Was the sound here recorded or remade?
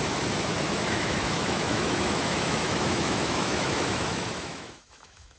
remade